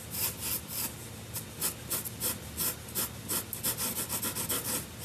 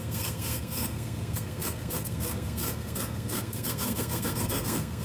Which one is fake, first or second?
second